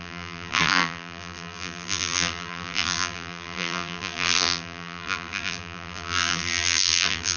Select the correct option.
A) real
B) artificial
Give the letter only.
B